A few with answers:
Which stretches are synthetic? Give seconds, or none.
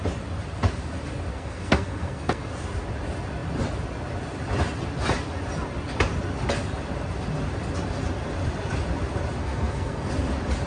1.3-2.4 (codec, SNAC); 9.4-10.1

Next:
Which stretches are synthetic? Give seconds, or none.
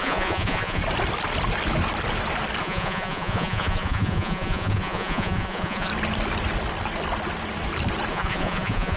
0.0-0.8 (vocoder, Vocos); 2.6-5.9; 8.1-9.0